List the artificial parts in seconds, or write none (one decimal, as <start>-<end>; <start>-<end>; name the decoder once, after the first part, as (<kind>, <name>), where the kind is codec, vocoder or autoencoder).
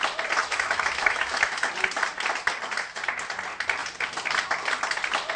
0.4-1.7 (autoencoder, DAC-VAE)